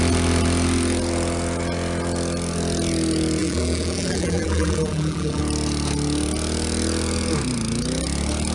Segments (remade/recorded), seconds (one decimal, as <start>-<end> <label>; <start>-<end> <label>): 0.0-3.4 recorded; 3.4-5.4 remade; 5.4-8.5 recorded